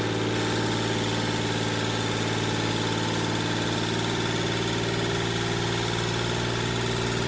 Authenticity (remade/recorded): recorded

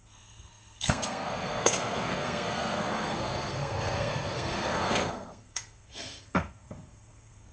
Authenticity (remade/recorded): remade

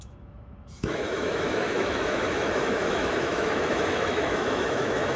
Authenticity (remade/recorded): remade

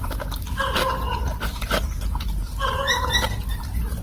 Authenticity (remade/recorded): remade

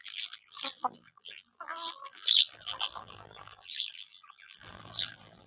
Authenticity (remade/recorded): remade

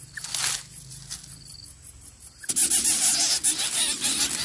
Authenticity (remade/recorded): recorded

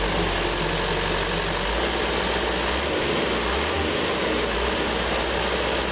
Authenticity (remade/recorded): recorded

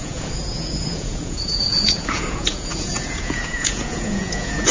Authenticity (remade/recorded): remade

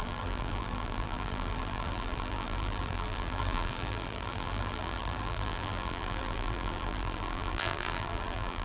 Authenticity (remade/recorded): remade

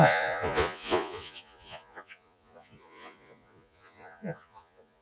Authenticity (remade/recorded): remade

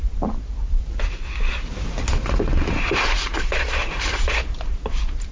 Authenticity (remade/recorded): remade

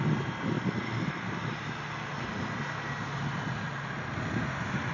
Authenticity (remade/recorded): recorded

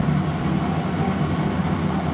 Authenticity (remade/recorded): recorded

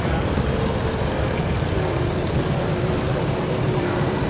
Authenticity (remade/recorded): remade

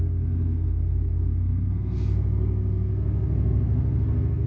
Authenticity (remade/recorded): remade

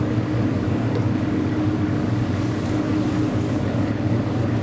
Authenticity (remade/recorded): remade